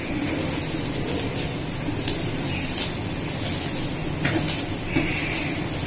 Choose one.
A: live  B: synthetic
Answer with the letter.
A